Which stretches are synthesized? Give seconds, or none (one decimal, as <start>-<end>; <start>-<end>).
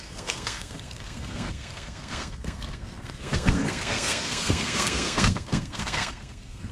0.0-6.7